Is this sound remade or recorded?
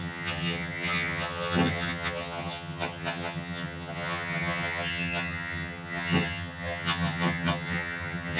remade